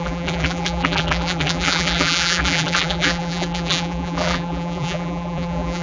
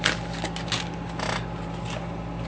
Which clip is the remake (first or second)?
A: first